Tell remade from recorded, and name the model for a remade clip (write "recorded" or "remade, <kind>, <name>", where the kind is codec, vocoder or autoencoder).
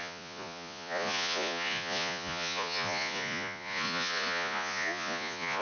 remade, vocoder, Vocos